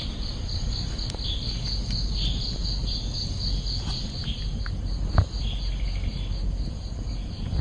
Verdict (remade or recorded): recorded